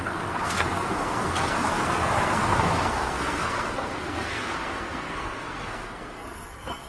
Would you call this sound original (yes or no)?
no